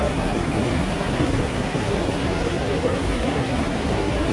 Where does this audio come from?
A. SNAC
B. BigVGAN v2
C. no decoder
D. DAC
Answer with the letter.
A